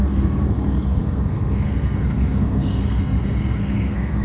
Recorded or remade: remade